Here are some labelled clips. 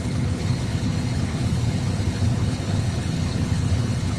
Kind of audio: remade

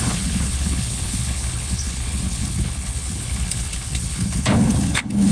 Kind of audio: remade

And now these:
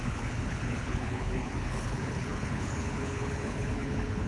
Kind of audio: remade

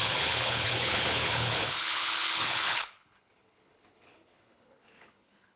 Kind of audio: remade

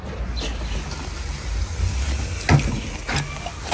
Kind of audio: recorded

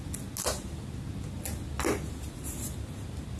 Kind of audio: recorded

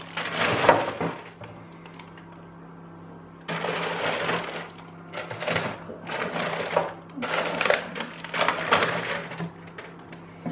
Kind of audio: recorded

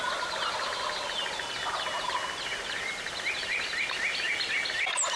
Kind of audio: recorded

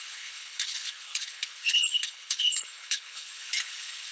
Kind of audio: remade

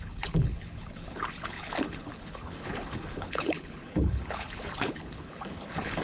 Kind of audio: remade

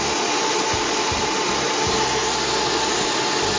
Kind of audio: recorded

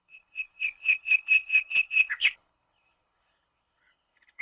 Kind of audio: remade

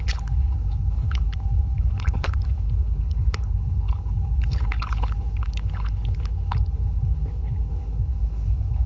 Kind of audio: remade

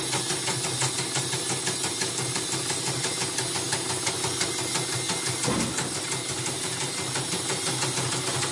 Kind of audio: recorded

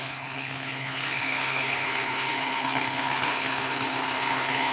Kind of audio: remade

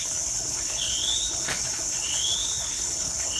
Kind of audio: remade